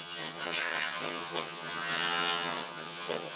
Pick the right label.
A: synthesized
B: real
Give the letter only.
A